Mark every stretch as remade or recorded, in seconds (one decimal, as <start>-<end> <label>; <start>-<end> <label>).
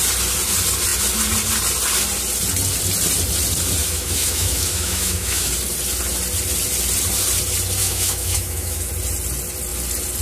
0.0-3.8 recorded; 3.8-5.5 remade; 5.5-7.8 recorded; 7.8-8.9 remade; 8.9-10.2 recorded